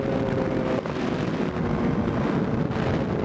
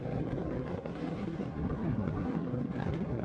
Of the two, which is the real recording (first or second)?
first